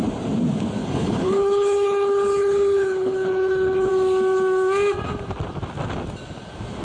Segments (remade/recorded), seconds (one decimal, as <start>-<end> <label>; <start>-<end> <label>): 0.0-0.8 recorded; 0.8-3.9 remade; 3.9-6.8 recorded